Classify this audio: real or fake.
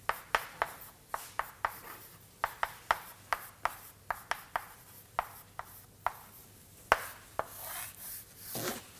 real